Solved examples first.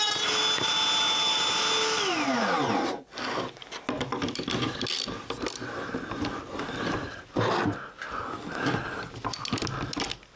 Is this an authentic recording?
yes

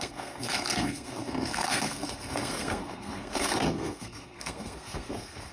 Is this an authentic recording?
no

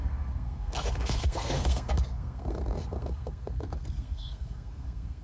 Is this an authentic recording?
no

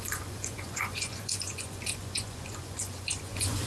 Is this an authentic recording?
no